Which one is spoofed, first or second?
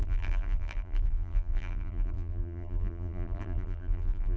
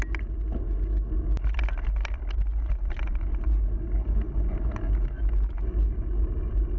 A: first